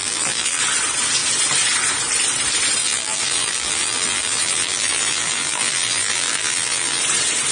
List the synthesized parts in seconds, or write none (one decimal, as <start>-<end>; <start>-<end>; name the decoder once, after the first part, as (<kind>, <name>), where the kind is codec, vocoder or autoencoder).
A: 0.0-0.6 (vocoder, BigVGAN v2); 2.8-7.0